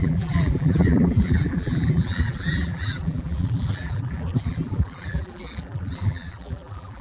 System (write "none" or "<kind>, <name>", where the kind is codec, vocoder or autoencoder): vocoder, BigVGAN v2